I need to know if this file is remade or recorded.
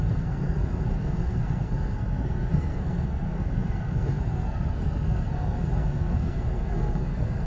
remade